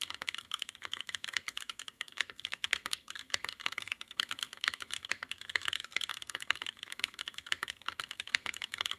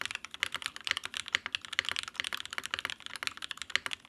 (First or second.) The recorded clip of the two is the second